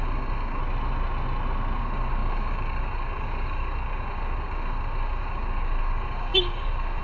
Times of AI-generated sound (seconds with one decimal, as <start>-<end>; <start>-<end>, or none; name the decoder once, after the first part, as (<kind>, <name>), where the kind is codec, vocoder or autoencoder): 0.0-0.6 (codec, DAC); 1.8-7.0